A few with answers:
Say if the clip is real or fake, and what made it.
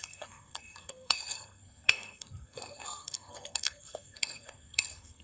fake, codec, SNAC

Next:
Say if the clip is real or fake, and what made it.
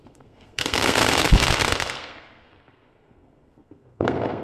fake, codec, SNAC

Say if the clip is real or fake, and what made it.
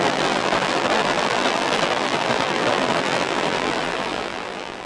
fake, vocoder, BigVGAN v2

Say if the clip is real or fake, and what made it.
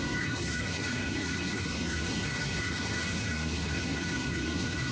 fake, codec, SNAC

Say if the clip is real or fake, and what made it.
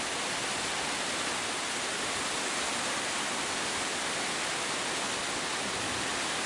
real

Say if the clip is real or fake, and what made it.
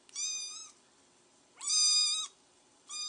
real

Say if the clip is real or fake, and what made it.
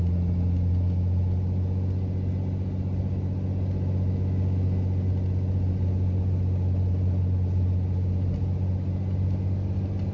real